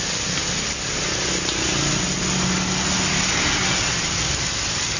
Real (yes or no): yes